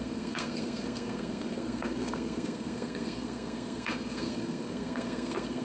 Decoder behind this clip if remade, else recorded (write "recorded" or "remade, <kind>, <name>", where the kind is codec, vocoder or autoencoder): remade, codec, SNAC